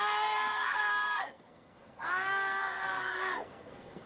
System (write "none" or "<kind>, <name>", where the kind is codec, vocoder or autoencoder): codec, SNAC